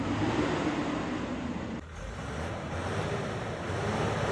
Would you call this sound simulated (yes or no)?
no